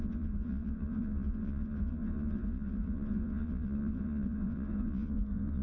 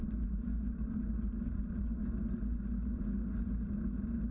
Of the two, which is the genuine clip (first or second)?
second